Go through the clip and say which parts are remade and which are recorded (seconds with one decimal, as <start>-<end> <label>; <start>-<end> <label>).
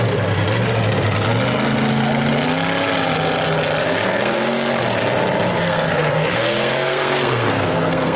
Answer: 0.0-3.8 recorded; 3.8-4.7 remade; 4.7-5.5 recorded; 5.5-8.2 remade